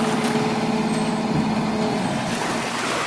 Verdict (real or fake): real